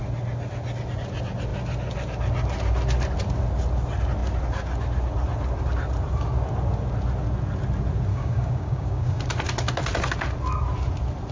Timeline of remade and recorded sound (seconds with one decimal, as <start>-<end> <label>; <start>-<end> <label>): 0.0-8.1 recorded; 8.1-9.2 remade; 9.2-11.3 recorded